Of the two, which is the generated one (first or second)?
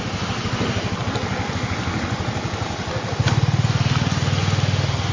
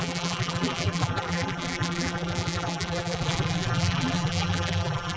second